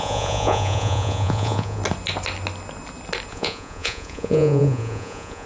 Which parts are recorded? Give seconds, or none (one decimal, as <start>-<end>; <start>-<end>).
1.8-3.3